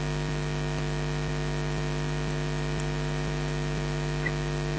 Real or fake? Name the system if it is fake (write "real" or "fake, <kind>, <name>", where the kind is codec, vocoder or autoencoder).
real